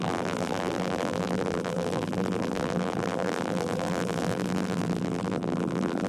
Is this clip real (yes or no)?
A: no